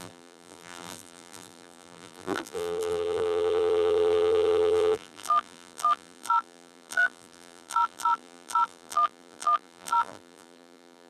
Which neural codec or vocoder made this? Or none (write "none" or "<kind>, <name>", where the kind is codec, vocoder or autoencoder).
vocoder, BigVGAN v2